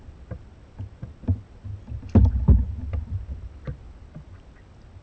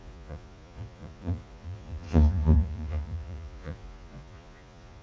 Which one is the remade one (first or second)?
second